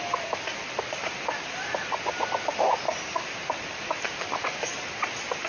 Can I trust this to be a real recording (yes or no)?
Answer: yes